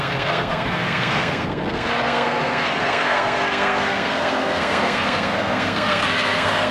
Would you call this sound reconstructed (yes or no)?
yes